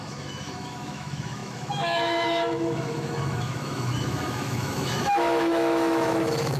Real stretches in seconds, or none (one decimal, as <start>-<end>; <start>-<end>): none